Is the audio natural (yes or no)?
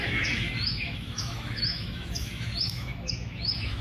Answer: no